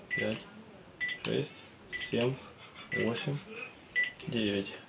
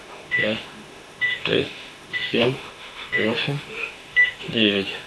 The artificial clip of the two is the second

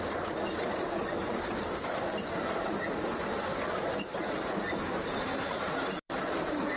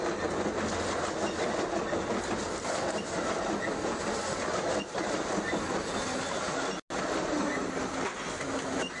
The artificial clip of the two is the first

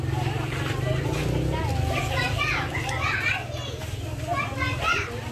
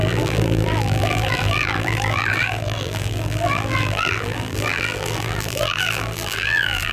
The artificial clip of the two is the second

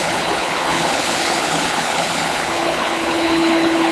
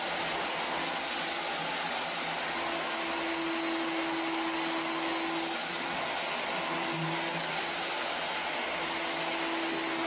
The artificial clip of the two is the first